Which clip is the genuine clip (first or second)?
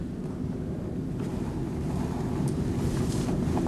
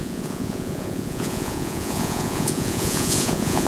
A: first